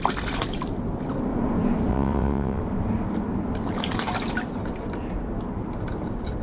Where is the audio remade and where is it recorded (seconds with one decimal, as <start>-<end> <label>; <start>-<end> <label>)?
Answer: 0.0-1.9 recorded; 1.9-2.6 remade; 2.6-6.4 recorded